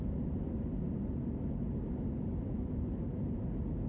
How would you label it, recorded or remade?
recorded